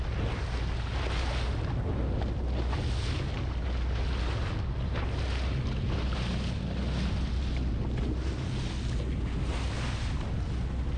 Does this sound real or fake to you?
real